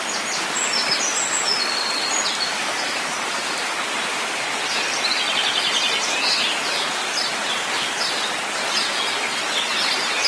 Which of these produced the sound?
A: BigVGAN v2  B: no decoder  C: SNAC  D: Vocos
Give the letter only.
B